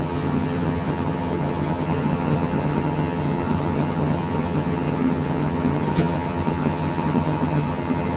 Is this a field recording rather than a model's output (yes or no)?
no